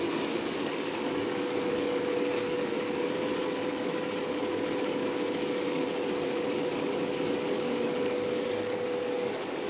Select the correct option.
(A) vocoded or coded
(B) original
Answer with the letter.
A